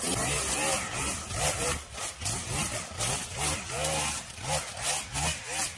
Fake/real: real